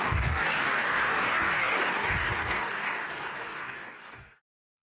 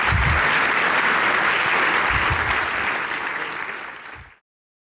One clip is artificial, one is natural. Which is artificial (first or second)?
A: first